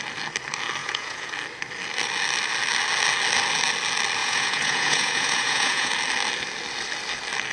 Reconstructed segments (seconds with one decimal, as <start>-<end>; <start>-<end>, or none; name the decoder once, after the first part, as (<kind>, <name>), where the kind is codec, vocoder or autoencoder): 0.8-1.3 (vocoder, Vocos); 4.2-5.9